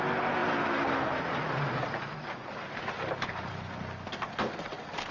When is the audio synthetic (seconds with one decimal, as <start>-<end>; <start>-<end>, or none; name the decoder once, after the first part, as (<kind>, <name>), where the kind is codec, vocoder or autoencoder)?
0.4-3.5 (vocoder, BigVGAN v2)